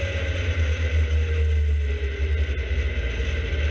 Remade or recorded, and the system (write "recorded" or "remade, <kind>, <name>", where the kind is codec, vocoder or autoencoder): recorded